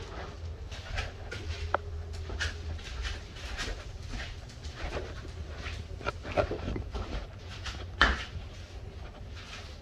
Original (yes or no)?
yes